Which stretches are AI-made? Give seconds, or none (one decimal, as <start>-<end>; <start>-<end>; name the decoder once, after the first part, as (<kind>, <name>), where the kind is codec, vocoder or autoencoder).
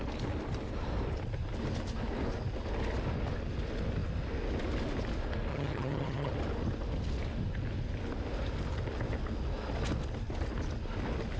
5.5-6.3 (vocoder, HiFi-GAN)